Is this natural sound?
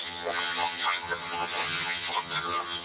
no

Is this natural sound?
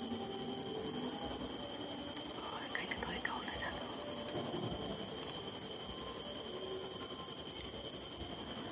yes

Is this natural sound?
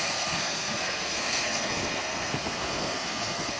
no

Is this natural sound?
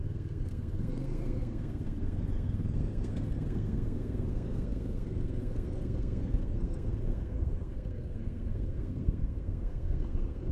no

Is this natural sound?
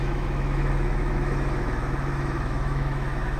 no